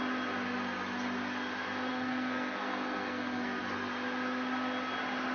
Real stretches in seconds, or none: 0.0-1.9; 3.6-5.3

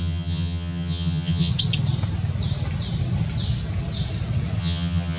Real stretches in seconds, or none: 1.5-4.6